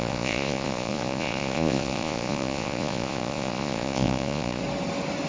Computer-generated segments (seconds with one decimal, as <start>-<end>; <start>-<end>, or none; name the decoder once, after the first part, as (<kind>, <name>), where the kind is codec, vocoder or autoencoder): 0.0-4.6 (vocoder, Vocos)